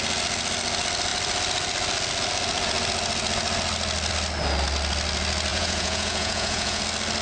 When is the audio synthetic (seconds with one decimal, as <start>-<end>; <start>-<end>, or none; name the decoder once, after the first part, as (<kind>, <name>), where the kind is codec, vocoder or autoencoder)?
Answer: 5.5-6.8 (vocoder, Vocos)